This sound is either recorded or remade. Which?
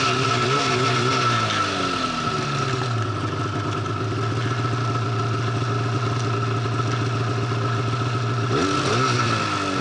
recorded